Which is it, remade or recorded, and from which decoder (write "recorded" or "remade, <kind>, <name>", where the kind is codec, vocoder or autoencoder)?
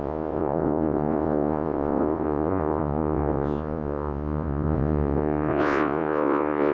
remade, vocoder, Vocos